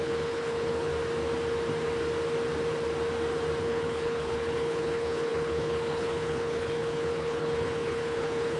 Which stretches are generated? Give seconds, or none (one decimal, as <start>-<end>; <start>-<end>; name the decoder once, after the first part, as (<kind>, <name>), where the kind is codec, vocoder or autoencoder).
0.0-0.9 (codec, HILCodec); 3.6-8.6